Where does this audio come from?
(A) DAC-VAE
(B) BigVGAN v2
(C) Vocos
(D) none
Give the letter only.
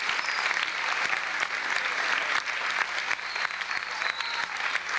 D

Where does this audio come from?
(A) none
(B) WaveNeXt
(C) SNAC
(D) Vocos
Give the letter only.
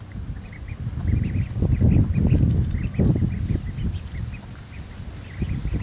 A